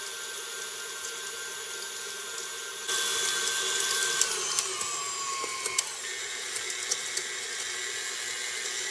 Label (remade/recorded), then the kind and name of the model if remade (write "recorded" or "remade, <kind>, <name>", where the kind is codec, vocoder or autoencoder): recorded